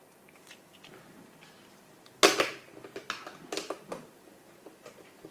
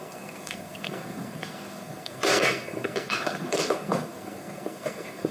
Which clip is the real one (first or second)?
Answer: first